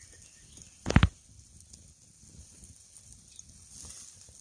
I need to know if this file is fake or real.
real